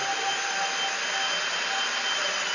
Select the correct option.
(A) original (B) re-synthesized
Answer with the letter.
A